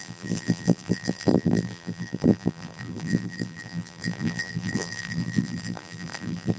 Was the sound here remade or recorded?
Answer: remade